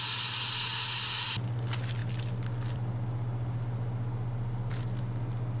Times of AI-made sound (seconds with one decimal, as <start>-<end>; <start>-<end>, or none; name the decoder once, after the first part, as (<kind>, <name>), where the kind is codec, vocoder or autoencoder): none